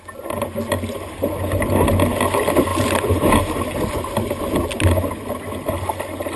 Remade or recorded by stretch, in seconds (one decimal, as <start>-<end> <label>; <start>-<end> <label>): 0.0-2.7 recorded; 2.7-3.3 remade; 3.3-6.4 recorded